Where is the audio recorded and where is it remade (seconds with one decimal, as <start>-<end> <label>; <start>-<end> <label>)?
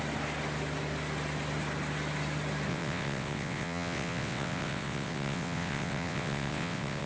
0.0-2.7 recorded; 2.7-7.1 remade